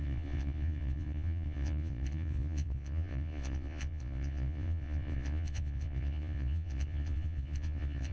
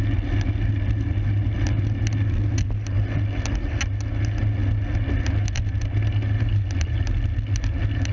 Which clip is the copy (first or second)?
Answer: first